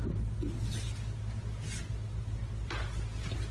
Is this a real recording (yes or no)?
yes